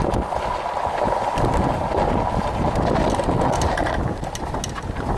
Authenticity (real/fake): real